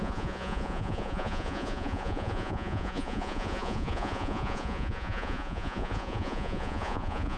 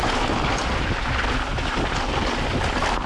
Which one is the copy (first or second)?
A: first